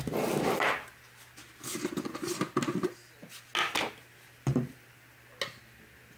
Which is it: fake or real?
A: real